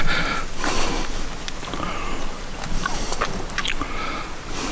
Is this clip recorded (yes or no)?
yes